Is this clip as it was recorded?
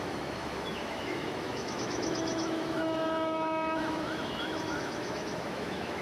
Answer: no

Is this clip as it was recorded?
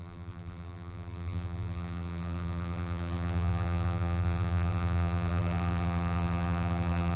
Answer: no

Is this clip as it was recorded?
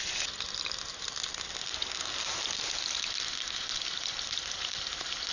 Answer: yes